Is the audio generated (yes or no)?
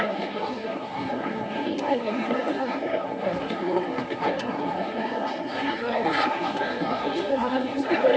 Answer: yes